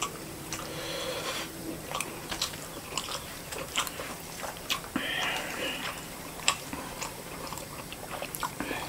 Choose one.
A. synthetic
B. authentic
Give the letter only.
A